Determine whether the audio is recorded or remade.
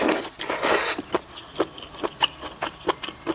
recorded